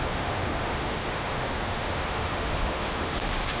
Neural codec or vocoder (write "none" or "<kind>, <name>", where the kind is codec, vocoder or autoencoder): autoencoder, DAC-VAE